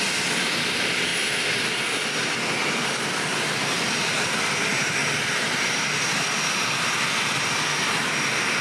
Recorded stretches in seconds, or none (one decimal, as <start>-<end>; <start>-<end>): 0.0-8.6